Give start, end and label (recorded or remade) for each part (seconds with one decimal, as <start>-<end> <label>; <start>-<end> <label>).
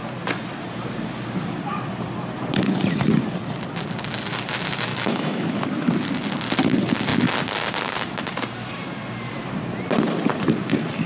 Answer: 0.0-4.9 recorded; 4.9-5.6 remade; 5.6-11.1 recorded